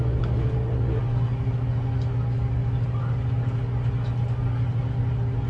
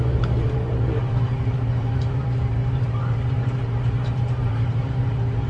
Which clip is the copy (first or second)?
second